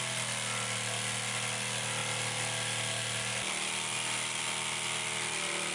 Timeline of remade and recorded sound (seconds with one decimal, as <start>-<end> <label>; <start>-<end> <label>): 0.0-5.7 recorded